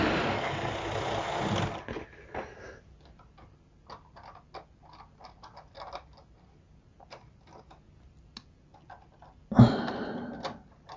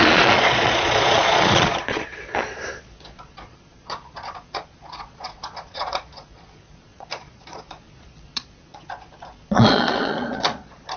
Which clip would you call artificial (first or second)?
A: second